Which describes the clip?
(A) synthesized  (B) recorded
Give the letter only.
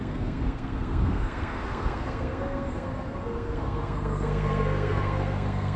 A